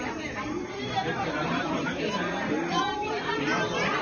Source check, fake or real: fake